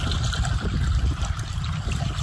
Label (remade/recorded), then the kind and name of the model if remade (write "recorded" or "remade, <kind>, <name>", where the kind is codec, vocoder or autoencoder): recorded